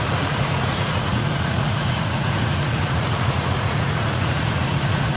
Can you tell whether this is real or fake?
fake